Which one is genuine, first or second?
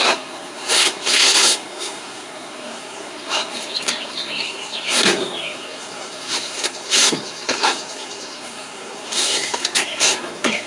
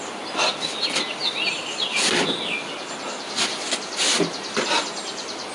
second